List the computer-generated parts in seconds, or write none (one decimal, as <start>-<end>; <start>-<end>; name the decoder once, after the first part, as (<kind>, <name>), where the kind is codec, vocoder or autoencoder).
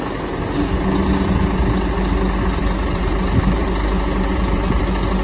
2.6-4.8 (vocoder, BigVGAN v2)